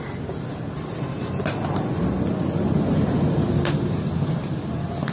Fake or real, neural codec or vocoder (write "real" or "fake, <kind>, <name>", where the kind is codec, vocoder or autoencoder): real